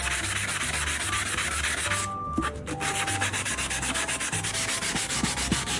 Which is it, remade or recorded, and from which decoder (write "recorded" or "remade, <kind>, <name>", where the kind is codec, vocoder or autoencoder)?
recorded